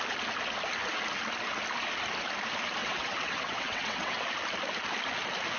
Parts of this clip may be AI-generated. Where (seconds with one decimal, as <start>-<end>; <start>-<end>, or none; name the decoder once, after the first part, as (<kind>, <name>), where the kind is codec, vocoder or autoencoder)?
2.8-4.2 (vocoder, WaveNeXt)